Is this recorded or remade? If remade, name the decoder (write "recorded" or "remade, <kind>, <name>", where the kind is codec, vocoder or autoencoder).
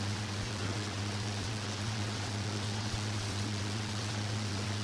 remade, vocoder, WaveNeXt